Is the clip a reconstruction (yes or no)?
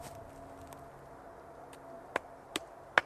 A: no